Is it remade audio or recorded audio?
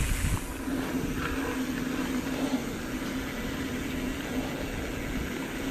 recorded